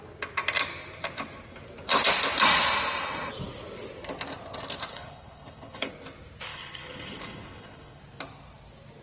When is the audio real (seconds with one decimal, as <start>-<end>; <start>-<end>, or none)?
0.0-4.9; 5.9-6.5; 8.0-9.0